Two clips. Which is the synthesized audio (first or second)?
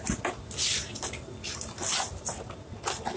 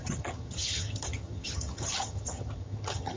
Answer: second